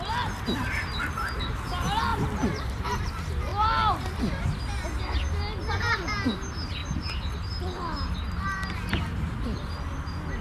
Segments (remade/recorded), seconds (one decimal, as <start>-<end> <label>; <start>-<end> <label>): 0.0-2.1 recorded; 2.1-3.0 remade; 3.0-3.5 recorded; 3.5-4.4 remade; 4.4-6.8 recorded; 6.8-10.0 remade; 10.0-10.4 recorded